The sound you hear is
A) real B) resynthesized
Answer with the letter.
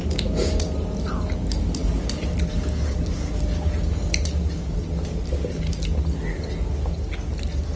A